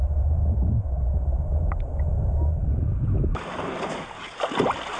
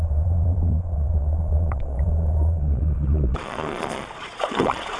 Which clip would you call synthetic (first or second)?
second